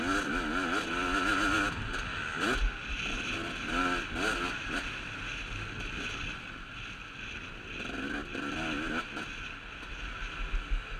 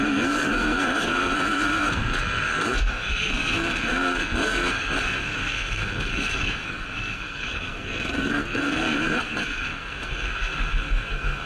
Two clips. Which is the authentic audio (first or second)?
first